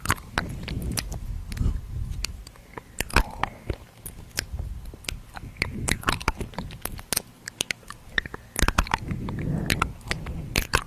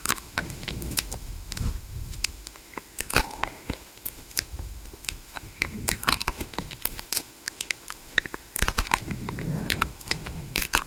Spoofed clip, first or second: second